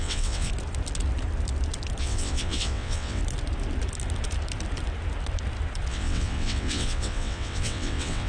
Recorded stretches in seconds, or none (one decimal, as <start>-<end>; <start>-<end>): 0.5-2.0; 3.2-5.9

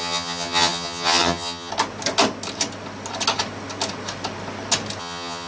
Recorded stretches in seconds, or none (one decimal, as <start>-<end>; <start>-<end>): 1.7-5.0

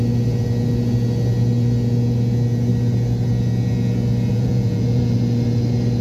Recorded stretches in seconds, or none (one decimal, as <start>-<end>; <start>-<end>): 0.0-4.3; 5.0-6.0

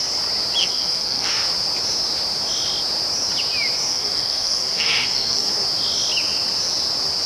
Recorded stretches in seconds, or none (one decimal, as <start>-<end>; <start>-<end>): 0.0-0.6; 1.3-3.9; 5.5-7.3